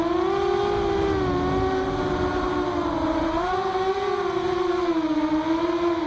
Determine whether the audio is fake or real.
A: real